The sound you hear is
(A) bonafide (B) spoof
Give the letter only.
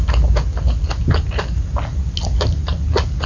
A